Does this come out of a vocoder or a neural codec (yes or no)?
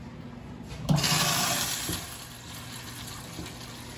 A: no